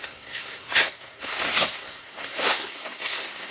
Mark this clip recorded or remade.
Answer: remade